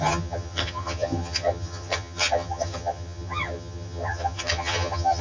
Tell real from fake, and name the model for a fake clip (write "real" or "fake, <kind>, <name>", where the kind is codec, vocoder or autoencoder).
fake, vocoder, HiFi-GAN